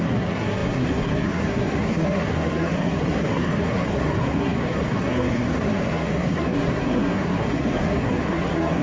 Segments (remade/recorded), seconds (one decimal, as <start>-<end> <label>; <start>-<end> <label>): 0.0-8.8 remade